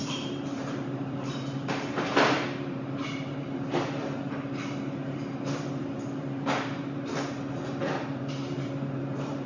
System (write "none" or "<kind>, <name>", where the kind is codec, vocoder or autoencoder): vocoder, BigVGAN v2